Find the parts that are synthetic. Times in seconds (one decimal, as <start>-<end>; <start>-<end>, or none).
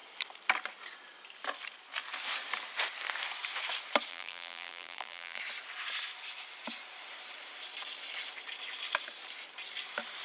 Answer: 4.1-5.4